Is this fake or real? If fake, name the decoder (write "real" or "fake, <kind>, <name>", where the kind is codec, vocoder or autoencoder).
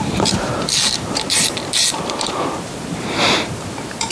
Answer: fake, vocoder, BigVGAN v2